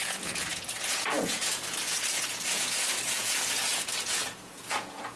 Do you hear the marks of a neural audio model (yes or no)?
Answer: yes